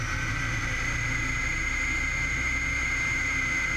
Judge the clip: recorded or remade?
recorded